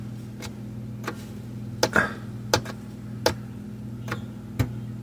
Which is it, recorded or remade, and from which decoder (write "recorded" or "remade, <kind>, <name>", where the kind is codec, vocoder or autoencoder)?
recorded